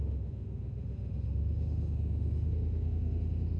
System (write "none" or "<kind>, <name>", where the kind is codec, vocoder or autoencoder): autoencoder, DAC-VAE